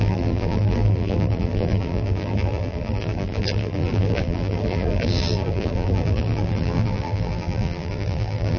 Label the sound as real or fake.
fake